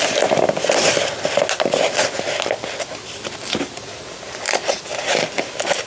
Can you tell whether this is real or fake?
real